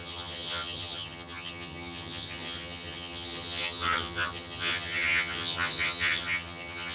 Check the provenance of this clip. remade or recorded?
remade